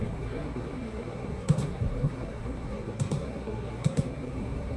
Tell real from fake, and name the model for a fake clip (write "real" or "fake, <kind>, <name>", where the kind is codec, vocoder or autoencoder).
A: fake, codec, SNAC